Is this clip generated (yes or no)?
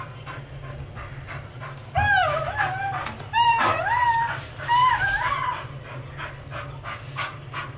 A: no